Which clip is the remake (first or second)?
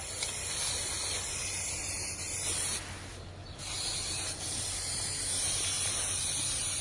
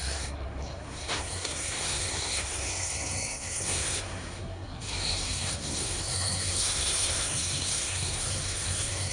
second